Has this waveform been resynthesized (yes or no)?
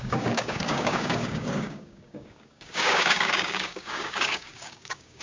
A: yes